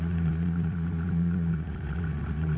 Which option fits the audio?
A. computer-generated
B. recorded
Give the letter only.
A